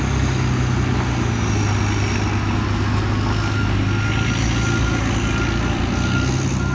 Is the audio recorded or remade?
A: recorded